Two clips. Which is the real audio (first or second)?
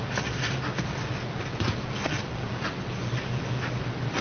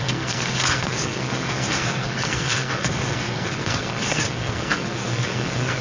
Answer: first